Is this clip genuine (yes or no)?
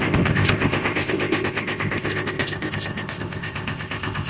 no